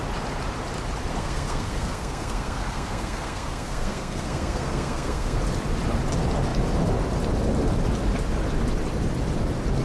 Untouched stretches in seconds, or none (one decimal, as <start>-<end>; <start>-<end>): 0.0-1.1; 5.4-9.8